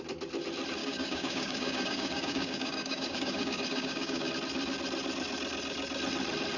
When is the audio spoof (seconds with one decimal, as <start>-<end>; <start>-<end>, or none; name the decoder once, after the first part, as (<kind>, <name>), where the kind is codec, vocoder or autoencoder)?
0.8-4.3 (codec, DAC)

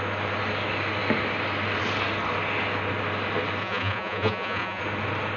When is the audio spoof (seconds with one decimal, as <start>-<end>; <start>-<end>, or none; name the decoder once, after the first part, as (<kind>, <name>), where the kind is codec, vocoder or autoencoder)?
3.6-4.8 (vocoder, Vocos)

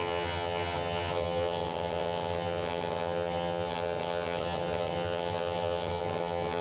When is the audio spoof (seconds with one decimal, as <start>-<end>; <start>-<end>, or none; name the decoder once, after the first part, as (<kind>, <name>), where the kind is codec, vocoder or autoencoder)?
0.0-6.6 (vocoder, HiFi-GAN)

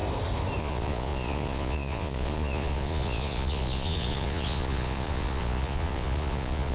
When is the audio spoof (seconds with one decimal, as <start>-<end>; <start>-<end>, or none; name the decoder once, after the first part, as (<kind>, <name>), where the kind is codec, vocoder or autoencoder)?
0.6-6.7 (vocoder, Vocos)

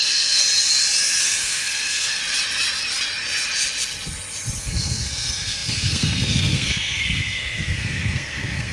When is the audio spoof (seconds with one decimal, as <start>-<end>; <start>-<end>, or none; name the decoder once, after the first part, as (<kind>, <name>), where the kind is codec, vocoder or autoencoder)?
0.0-0.4 (codec, SNAC); 1.2-2.2; 4.6-8.7

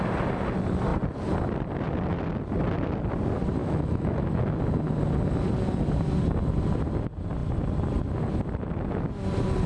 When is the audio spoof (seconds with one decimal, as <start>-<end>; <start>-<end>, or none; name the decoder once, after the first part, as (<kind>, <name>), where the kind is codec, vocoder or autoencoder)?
3.6-4.4 (autoencoder, DAC-VAE)

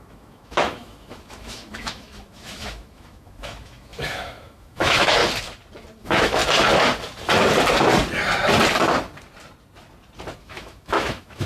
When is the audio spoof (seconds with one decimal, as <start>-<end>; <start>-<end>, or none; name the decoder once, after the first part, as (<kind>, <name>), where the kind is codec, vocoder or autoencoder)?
0.0-5.2 (autoencoder, DAC-VAE); 6.0-6.4; 10.4-11.5

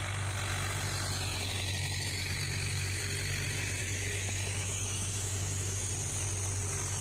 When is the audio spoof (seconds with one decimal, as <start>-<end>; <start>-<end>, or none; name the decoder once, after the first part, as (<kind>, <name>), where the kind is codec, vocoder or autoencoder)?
1.3-3.0 (autoencoder, DAC-VAE); 3.8-5.9